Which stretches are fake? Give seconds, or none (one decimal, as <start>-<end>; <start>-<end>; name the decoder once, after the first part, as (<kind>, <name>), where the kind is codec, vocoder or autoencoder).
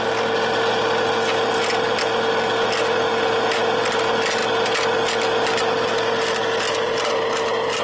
none